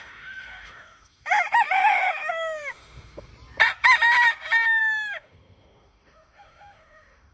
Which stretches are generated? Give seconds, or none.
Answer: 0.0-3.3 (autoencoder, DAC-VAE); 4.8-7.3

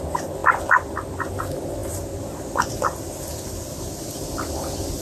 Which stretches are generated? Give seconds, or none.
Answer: none

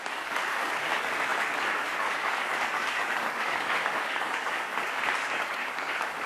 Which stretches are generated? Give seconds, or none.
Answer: 0.0-6.3 (codec, DAC)

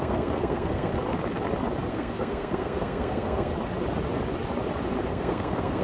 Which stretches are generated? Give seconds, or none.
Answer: 0.0-0.9 (codec, SNAC); 1.9-3.5; 5.1-5.8

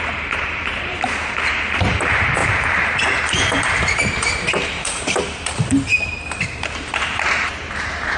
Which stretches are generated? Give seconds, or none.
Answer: 0.0-8.2 (vocoder, BigVGAN v2)